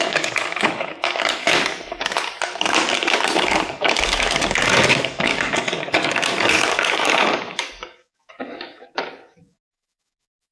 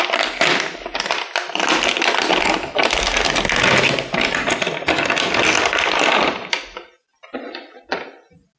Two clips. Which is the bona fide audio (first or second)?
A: second